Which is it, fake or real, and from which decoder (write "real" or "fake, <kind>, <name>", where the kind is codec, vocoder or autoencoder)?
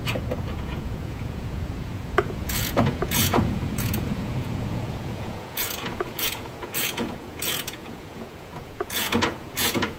fake, vocoder, Vocos